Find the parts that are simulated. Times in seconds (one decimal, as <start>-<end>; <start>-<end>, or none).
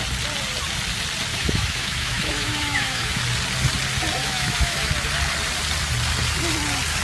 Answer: 1.3-3.2; 4.2-4.9